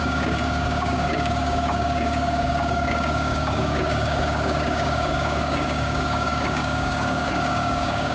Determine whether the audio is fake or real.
fake